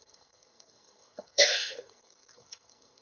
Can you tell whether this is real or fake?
fake